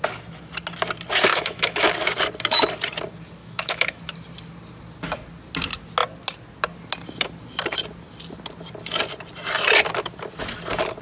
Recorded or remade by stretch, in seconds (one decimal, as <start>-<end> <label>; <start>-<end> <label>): 0.0-1.3 recorded; 1.3-1.9 remade; 1.9-3.4 recorded; 3.4-4.0 remade; 4.0-11.0 recorded